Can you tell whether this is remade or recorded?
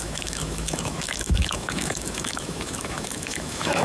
remade